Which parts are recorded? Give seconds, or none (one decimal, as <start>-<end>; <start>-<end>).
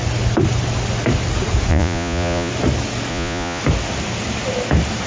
0.0-1.7; 2.5-3.1; 3.6-5.1